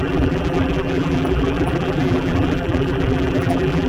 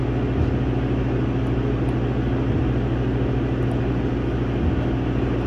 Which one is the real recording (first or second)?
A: second